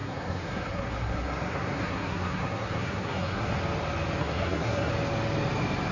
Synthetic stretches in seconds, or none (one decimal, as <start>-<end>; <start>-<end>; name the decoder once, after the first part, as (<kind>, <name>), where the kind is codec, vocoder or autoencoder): 0.0-3.5 (codec, SNAC); 4.2-4.9